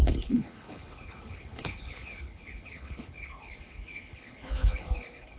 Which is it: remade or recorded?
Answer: remade